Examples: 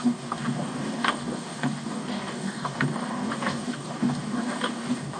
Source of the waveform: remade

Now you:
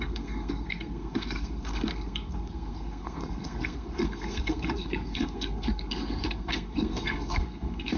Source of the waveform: remade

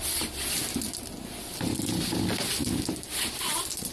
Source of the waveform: recorded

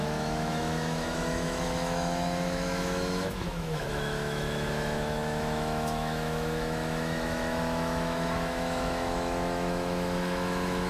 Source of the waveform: remade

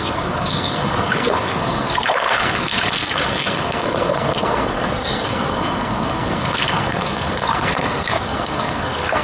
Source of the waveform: remade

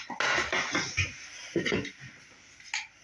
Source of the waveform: recorded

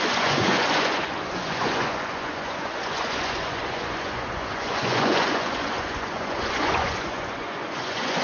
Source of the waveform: remade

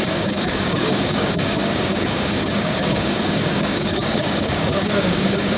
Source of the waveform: remade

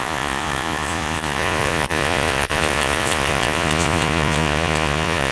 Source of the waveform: remade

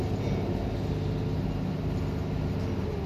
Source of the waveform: recorded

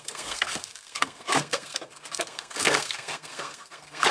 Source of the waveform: remade